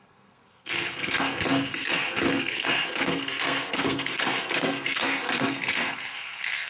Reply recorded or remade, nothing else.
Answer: remade